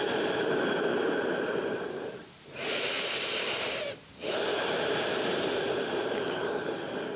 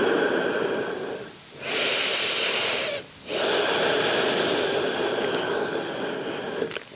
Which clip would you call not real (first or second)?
first